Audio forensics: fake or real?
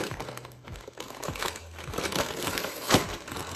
fake